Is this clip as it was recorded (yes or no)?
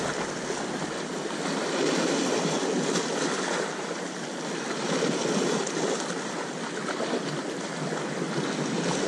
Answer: yes